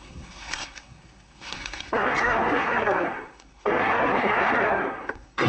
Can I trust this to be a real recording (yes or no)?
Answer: no